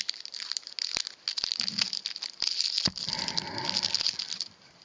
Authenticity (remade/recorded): recorded